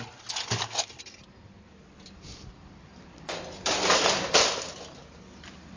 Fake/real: real